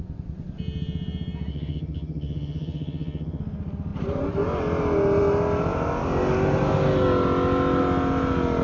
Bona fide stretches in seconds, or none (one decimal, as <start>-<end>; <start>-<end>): 0.0-1.5; 3.4-8.6